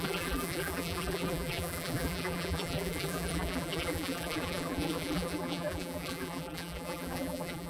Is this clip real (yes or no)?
no